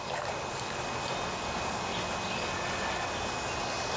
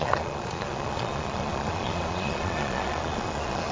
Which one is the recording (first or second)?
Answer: first